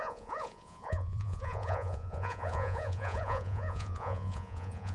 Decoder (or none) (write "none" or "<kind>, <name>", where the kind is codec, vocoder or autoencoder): vocoder, Vocos